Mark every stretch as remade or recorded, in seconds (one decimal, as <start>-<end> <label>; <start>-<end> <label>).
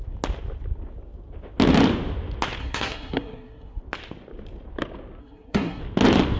0.0-2.6 recorded; 2.6-3.8 remade; 3.8-5.2 recorded; 5.2-5.8 remade; 5.8-6.4 recorded